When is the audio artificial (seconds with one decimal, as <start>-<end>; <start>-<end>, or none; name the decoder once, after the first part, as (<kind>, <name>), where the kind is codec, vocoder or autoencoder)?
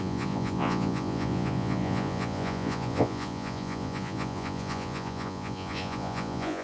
0.0-6.6 (vocoder, Vocos)